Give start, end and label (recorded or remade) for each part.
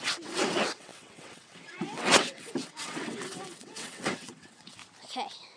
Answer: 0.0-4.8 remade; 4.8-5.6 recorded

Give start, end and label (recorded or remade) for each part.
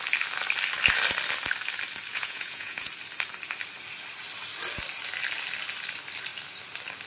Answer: 0.0-2.1 recorded; 2.1-2.9 remade; 2.9-7.1 recorded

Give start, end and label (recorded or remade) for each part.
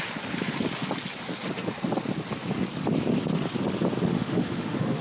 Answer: 0.0-4.1 recorded; 4.1-5.0 remade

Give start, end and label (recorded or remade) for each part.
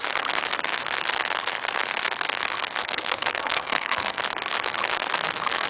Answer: 0.0-2.8 recorded; 2.8-4.2 remade; 4.2-5.7 recorded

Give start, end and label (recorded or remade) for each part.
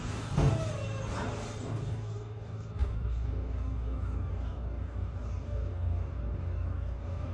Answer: 0.0-0.5 remade; 0.5-1.6 recorded; 1.6-7.3 remade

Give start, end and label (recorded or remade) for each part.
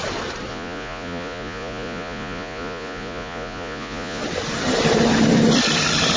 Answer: 0.0-0.5 recorded; 0.5-4.2 remade; 4.2-6.2 recorded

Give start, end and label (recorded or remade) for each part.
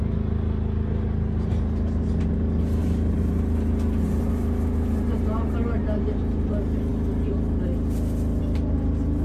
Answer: 0.0-2.8 recorded; 2.8-6.5 remade; 6.5-9.2 recorded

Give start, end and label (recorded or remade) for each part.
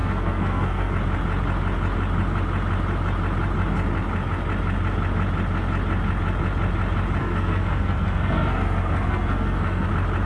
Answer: 0.0-0.9 remade; 0.9-7.2 recorded; 7.2-9.9 remade; 9.9-10.3 recorded